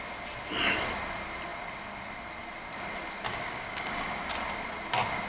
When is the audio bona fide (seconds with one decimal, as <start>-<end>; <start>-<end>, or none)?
0.0-3.3; 4.3-5.3